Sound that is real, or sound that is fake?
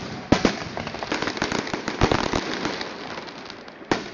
real